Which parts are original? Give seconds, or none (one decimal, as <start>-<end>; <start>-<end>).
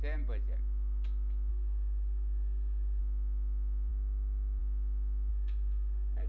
0.0-1.5; 3.0-5.3